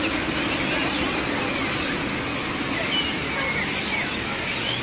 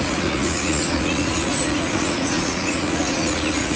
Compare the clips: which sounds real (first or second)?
first